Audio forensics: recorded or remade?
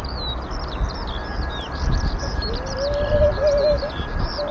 recorded